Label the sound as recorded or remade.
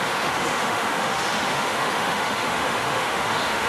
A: remade